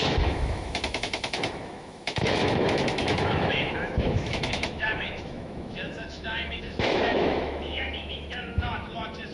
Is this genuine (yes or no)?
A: no